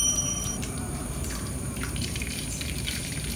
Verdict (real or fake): fake